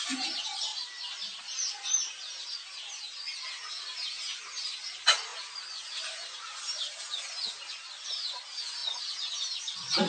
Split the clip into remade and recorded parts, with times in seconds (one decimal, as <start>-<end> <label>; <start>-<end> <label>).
0.0-0.7 recorded; 0.7-1.4 remade; 1.4-10.1 recorded